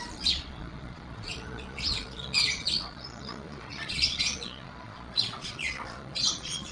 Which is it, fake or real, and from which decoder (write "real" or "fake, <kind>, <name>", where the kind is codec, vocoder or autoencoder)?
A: fake, vocoder, Vocos